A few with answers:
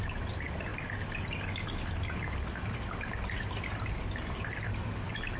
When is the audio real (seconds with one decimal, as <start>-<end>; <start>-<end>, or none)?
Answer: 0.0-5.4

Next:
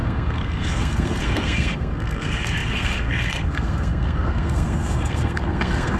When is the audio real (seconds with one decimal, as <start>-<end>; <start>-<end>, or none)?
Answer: none

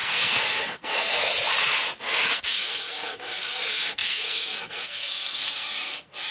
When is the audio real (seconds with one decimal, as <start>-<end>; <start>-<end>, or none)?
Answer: 1.3-2.0